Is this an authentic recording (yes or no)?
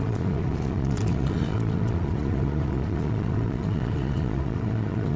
no